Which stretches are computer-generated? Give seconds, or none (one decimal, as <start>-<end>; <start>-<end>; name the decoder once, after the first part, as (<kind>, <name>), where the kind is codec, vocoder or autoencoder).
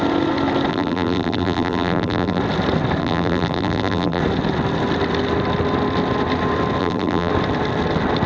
0.7-2.4 (vocoder, BigVGAN v2); 3.0-4.2; 6.8-7.3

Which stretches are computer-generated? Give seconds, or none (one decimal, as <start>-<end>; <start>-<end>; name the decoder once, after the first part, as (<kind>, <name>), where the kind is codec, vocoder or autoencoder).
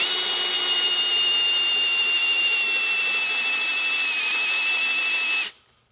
none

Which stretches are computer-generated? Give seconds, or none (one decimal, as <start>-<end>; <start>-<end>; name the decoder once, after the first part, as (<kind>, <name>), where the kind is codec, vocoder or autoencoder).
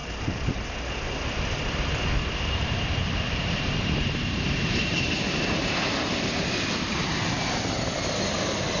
0.0-0.7 (vocoder, BigVGAN v2); 3.0-6.5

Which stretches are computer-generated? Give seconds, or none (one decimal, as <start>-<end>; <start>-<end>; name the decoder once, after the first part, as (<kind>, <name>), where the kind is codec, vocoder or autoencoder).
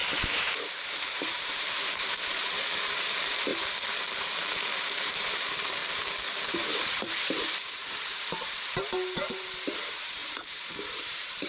0.0-3.5 (vocoder, BigVGAN v2); 4.2-5.8; 6.5-11.5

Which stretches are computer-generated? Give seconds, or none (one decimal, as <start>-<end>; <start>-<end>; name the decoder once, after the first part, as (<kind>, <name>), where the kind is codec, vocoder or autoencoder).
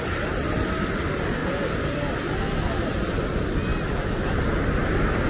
none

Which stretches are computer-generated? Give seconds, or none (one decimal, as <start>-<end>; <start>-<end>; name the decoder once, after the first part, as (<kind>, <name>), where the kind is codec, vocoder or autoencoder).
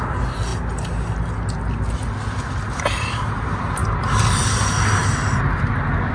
none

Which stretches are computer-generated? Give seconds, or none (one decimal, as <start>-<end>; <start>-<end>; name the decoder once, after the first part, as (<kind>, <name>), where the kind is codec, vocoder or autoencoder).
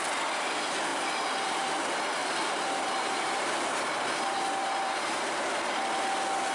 0.9-1.7 (vocoder, BigVGAN v2); 2.2-5.3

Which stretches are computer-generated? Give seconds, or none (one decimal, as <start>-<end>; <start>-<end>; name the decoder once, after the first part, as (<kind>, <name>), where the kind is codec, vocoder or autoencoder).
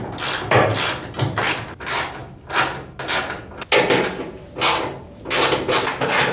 none